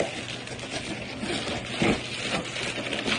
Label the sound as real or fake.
real